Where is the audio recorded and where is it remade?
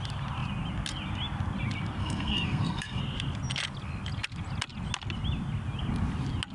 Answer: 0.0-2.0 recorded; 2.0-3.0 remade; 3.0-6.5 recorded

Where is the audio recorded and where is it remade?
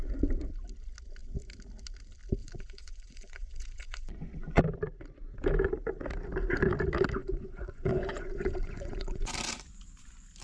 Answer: 0.0-2.4 recorded; 2.4-4.6 remade; 4.6-7.2 recorded; 7.2-9.3 remade; 9.3-10.4 recorded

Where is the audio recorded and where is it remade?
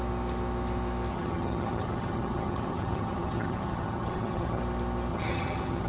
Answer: 0.0-1.1 recorded; 1.1-4.6 remade; 4.6-5.1 recorded; 5.1-5.9 remade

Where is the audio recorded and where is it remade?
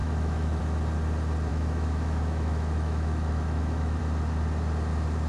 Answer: 0.0-0.6 remade; 0.6-1.5 recorded; 1.5-4.0 remade; 4.0-5.3 recorded